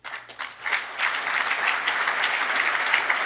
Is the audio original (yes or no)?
yes